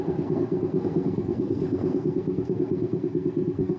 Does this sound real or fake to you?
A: fake